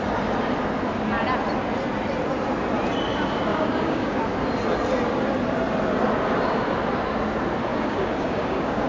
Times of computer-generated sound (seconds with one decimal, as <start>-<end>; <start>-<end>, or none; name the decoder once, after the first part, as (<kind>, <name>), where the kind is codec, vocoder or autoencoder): 3.5-4.2 (codec, DAC); 7.7-8.9